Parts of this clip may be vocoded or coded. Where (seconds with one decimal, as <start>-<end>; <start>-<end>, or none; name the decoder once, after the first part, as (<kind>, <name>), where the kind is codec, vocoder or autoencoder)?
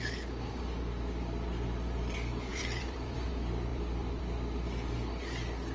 2.5-3.3 (vocoder, BigVGAN v2); 3.7-4.2